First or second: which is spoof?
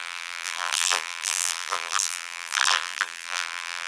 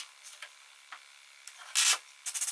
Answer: first